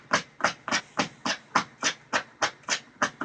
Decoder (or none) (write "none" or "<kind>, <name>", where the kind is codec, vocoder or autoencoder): none